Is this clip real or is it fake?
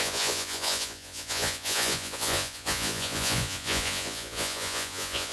fake